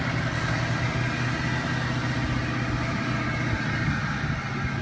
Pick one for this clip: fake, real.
real